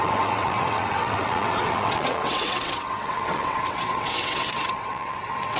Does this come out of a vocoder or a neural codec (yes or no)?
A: yes